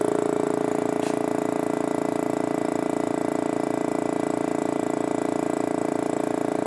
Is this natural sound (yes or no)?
yes